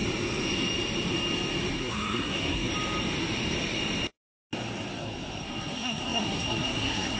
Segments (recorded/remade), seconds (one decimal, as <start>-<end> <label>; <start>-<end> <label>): 0.0-1.7 recorded; 1.7-2.7 remade; 2.7-5.4 recorded; 5.4-7.2 remade